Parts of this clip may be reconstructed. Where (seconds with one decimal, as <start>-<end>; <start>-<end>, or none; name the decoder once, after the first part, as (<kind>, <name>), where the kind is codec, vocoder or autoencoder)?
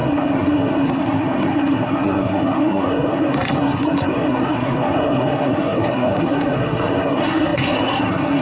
0.0-8.4 (codec, SNAC)